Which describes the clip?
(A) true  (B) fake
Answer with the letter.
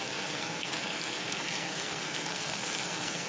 B